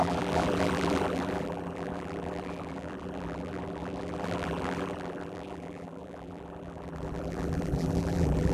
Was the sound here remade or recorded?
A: remade